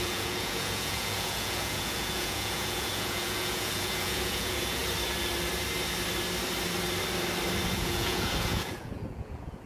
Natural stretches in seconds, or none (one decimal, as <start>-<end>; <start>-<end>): 4.8-7.7